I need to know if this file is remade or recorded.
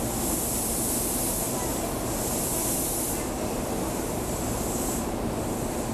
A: recorded